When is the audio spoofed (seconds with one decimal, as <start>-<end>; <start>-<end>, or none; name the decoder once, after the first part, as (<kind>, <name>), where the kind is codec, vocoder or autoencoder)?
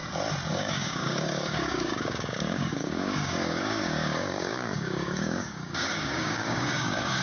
0.5-7.2 (codec, DAC)